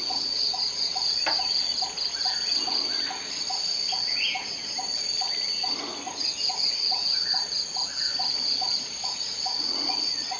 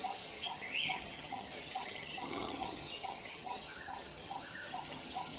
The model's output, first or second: second